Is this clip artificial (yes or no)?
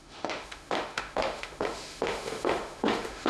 yes